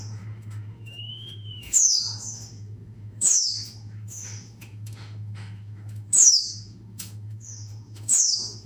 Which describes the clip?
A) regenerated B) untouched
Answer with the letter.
A